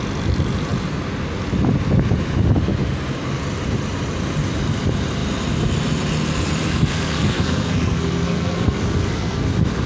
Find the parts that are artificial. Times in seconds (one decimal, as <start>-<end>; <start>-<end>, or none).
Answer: 6.7-9.5